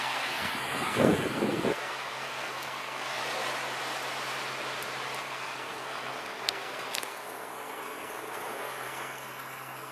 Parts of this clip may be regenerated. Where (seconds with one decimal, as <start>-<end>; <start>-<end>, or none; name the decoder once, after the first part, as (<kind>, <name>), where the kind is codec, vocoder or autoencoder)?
0.0-3.2 (codec, SNAC); 5.2-9.9